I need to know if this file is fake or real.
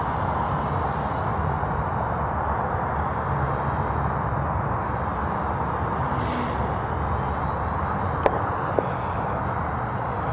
real